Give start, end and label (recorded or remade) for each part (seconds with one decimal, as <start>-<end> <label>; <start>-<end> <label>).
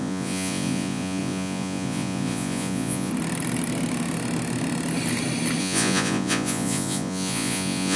0.0-3.1 remade; 3.1-5.6 recorded; 5.6-8.0 remade